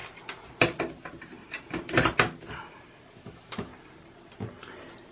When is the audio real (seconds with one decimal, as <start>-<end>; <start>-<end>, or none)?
0.0-3.1; 3.7-5.1